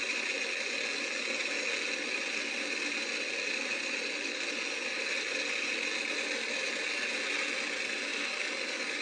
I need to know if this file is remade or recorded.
recorded